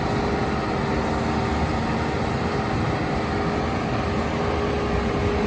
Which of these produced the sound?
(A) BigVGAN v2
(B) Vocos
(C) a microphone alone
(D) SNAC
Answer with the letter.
C